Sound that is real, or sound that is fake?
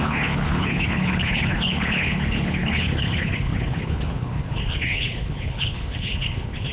fake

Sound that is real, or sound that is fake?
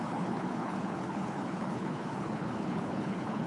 fake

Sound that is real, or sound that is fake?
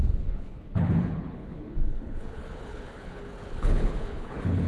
fake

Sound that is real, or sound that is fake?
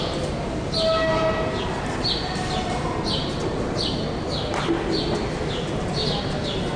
real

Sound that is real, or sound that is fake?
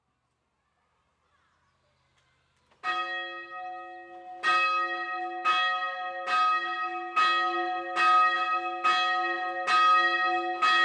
real